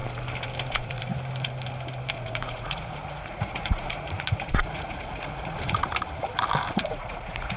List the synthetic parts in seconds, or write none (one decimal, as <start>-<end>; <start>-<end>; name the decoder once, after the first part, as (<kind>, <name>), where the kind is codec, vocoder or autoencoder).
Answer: 0.7-1.1 (vocoder, Vocos); 2.1-5.9; 6.8-7.6